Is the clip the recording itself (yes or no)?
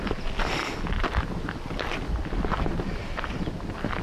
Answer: yes